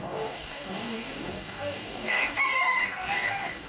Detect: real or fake fake